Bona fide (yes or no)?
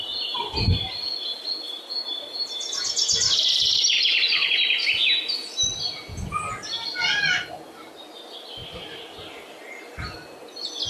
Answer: yes